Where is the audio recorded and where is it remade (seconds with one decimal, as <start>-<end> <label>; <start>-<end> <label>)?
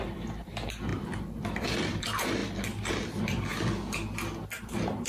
0.0-2.4 remade; 2.4-2.9 recorded; 2.9-3.5 remade; 3.5-4.6 recorded; 4.6-5.1 remade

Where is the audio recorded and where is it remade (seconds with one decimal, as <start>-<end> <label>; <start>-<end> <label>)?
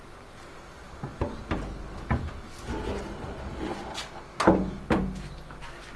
0.0-6.0 recorded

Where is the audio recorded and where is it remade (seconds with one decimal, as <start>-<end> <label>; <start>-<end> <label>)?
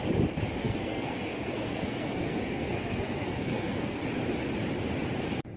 0.0-0.6 recorded; 0.6-4.0 remade; 4.0-5.6 recorded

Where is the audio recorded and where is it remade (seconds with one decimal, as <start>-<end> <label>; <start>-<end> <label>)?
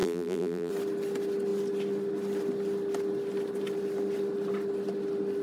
0.0-0.7 remade; 0.7-5.4 recorded